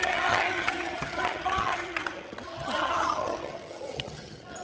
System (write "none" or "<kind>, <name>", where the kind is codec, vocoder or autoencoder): vocoder, HiFi-GAN